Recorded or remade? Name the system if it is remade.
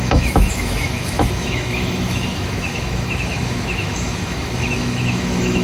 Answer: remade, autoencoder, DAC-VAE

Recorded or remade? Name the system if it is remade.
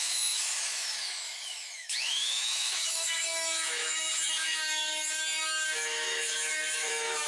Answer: remade, autoencoder, DAC-VAE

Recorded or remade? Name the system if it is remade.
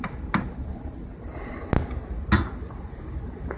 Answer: recorded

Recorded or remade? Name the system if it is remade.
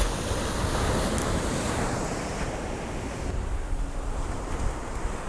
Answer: recorded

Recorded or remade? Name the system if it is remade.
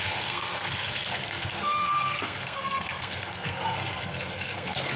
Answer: remade, codec, SNAC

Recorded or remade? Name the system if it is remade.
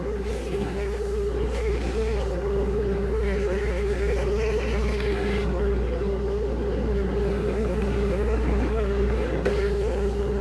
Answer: remade, codec, SNAC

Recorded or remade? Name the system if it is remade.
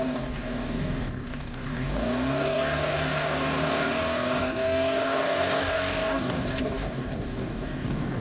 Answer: remade, codec, DAC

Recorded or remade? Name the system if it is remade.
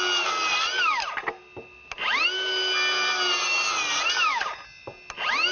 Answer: recorded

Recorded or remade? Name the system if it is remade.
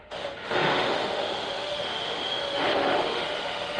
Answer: remade, autoencoder, DAC-VAE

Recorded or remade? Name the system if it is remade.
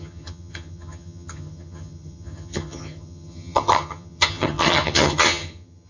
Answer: remade, vocoder, HiFi-GAN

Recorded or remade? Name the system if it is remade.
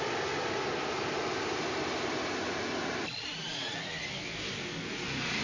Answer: recorded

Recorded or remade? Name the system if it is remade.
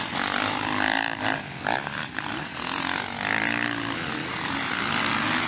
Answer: recorded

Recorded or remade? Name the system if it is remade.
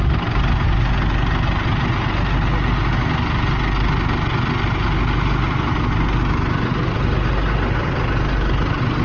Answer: recorded